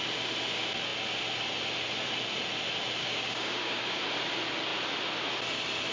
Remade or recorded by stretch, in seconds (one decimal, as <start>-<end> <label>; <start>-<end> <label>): 0.0-3.0 recorded; 3.0-4.0 remade; 4.0-5.9 recorded